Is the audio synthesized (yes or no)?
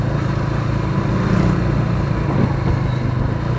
no